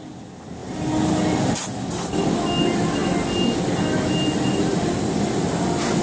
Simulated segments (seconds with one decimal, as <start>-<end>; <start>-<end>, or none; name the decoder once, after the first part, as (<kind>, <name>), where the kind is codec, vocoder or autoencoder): none